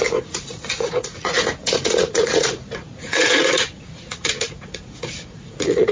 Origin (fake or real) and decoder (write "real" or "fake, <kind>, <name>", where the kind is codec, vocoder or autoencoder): fake, vocoder, Vocos